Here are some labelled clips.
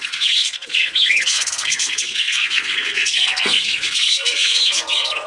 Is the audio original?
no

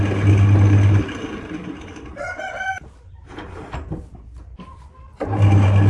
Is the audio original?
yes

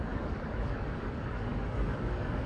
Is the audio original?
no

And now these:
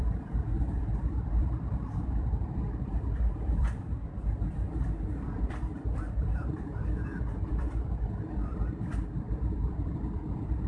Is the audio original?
no